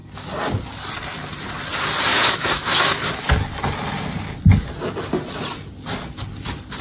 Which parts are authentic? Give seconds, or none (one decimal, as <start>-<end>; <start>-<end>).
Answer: 0.0-2.1; 3.0-6.8